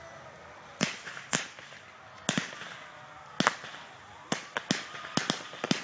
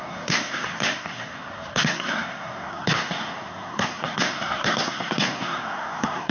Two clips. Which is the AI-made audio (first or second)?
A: second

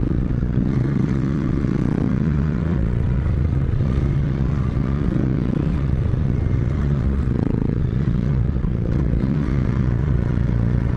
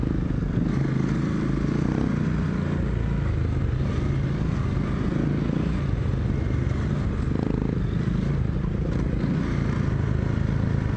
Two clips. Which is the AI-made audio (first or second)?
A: first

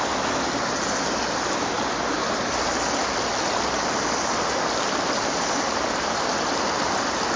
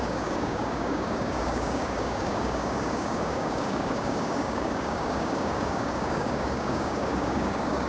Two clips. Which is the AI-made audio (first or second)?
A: second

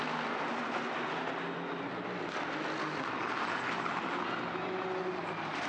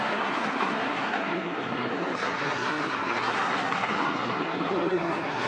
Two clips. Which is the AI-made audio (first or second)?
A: second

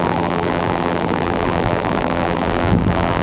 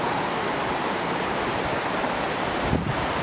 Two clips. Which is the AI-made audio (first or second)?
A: first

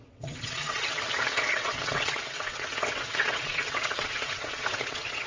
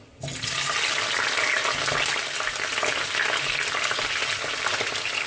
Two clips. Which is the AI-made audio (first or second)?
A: first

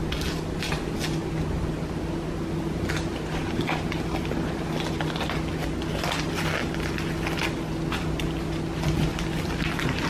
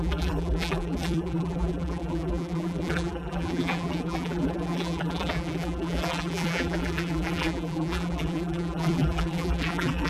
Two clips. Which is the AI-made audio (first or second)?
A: second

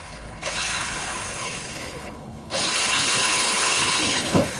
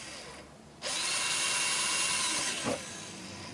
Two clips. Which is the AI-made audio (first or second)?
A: first